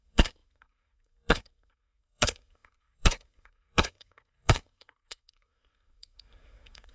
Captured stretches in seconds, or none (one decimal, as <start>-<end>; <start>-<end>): none